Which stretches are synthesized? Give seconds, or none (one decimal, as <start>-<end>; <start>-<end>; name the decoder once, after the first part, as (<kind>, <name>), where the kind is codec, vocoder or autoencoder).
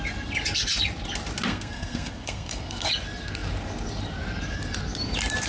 1.5-2.9 (codec, SNAC)